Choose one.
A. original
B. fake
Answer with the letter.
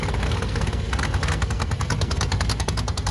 B